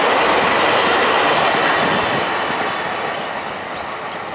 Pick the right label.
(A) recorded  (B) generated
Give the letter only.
A